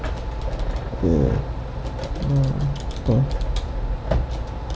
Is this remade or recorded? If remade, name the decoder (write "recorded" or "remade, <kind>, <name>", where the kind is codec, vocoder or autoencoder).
recorded